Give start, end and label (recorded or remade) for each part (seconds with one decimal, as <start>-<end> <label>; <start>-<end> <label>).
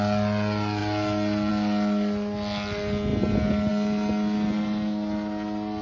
0.0-5.8 recorded